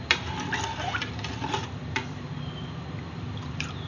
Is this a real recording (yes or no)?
no